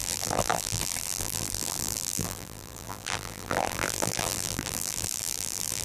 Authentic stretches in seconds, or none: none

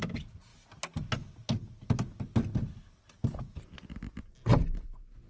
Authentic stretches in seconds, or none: 0.0-4.5

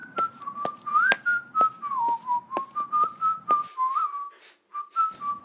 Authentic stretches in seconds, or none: 1.1-1.5; 4.3-5.4

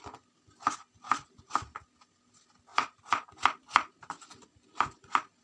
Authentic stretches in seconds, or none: 0.0-5.4

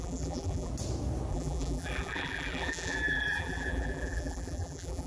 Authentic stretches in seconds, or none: 0.7-1.3

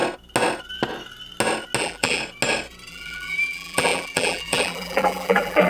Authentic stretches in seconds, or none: 0.0-1.8; 2.2-2.9

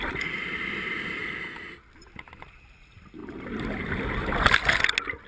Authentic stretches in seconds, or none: 1.2-1.9; 3.2-5.3